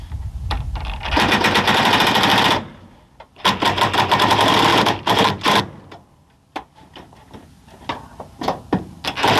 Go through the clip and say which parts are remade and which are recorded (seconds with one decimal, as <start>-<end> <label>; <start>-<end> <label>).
0.0-2.3 recorded; 2.3-4.1 remade; 4.1-4.7 recorded; 4.7-5.6 remade; 5.6-9.4 recorded